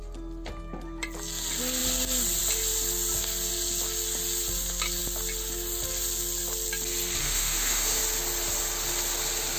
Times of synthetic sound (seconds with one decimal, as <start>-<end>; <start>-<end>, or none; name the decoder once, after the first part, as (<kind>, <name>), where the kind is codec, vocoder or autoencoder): 7.2-8.0 (autoencoder, DAC-VAE)